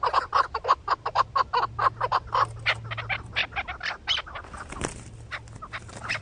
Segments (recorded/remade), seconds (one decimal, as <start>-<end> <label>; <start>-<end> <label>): 0.0-6.2 remade